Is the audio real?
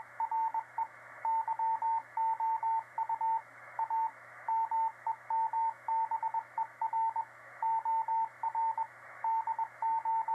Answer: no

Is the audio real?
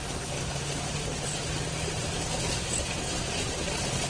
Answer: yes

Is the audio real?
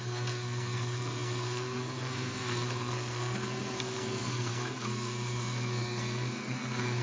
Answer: no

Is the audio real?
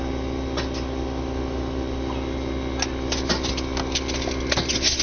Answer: yes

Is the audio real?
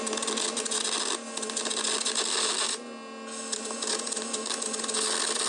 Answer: yes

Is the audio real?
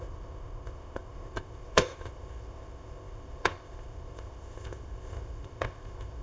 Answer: no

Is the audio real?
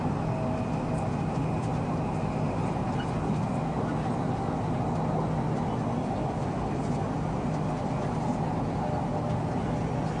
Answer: yes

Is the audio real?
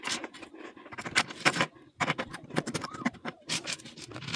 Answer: no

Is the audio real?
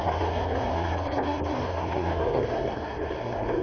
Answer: no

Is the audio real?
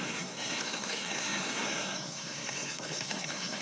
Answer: no